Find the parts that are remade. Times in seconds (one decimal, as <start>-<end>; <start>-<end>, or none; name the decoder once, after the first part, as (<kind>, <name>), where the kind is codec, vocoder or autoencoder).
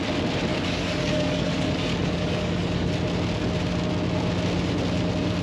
0.5-2.9 (codec, DAC)